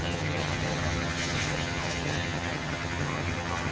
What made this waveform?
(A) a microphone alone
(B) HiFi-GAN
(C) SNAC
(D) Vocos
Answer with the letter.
B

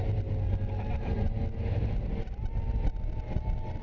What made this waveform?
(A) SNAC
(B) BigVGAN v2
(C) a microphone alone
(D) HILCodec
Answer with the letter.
C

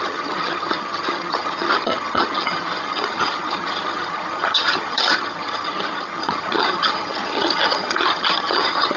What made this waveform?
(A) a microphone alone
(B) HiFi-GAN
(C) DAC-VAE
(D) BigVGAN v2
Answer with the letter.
B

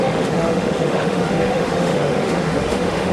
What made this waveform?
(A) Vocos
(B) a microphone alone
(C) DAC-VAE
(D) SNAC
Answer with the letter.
C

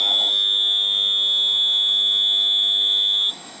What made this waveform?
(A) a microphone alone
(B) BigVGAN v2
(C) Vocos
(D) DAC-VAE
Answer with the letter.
D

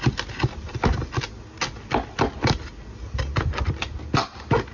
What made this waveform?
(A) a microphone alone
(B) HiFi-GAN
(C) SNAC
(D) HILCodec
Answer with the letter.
A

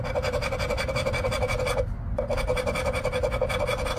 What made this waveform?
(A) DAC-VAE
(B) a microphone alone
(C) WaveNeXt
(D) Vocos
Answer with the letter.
B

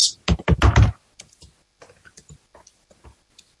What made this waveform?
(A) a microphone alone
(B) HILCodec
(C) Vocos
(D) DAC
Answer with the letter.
A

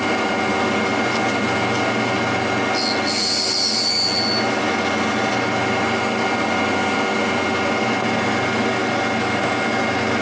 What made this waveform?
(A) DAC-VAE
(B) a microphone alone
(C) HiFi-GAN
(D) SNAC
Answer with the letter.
B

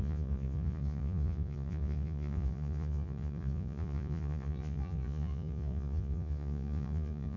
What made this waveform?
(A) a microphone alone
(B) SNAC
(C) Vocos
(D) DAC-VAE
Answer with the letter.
C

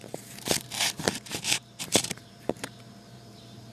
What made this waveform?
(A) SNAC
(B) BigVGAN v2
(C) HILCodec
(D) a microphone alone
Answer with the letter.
B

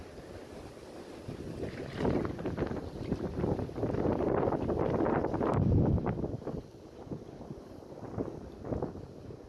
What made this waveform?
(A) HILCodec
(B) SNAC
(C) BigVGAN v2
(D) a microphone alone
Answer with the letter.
D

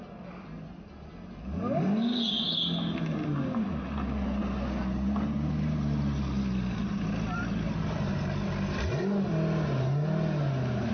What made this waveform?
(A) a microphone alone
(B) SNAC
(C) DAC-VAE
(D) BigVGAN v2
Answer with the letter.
A